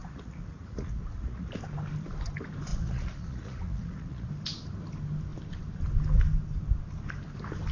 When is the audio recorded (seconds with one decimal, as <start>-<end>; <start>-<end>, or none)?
1.5-2.7; 4.3-7.7